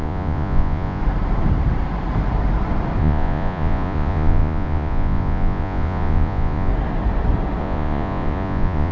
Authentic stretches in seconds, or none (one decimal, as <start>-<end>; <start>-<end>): 1.0-3.0; 6.7-7.6